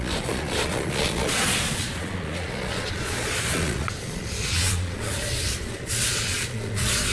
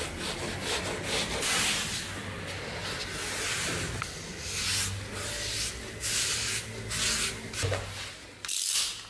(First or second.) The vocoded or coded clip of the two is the first